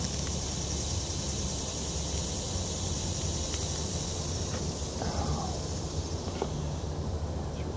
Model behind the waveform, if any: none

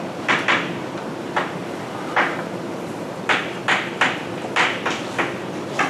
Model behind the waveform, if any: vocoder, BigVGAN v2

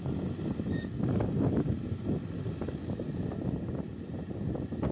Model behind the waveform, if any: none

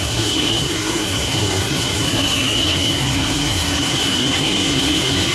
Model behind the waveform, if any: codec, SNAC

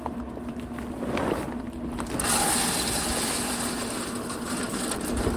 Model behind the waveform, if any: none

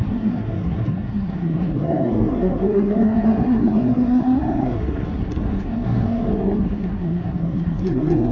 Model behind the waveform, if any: codec, SNAC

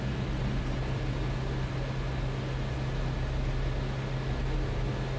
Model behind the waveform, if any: none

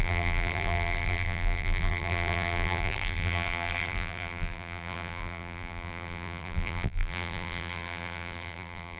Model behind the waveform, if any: vocoder, BigVGAN v2